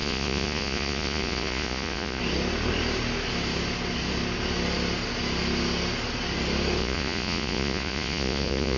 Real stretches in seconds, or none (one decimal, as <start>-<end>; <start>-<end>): 2.2-6.8